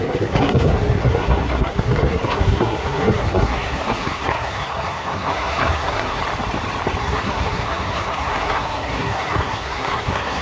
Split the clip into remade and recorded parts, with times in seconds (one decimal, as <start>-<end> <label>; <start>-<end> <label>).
0.0-6.2 remade; 6.2-7.0 recorded; 7.0-10.4 remade